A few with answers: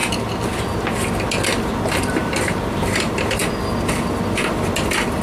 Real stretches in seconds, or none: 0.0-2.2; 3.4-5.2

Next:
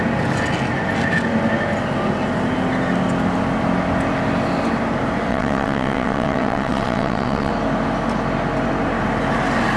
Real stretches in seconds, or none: 0.0-5.3; 7.5-9.8

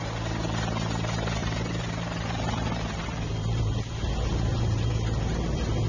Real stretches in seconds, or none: 0.0-1.4; 4.9-5.9

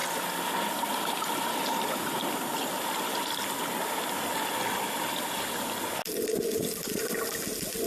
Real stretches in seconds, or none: 0.0-7.9

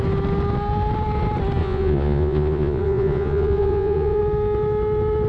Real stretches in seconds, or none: 0.0-1.6; 4.2-5.3

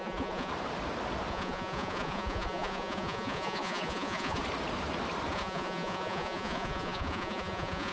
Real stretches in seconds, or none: 0.5-1.3; 4.4-5.3